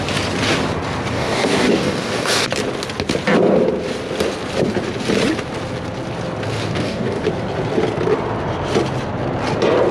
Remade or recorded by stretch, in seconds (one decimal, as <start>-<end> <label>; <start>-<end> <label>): 0.0-1.1 recorded; 1.1-2.5 remade; 2.5-6.6 recorded; 6.6-7.2 remade; 7.2-9.9 recorded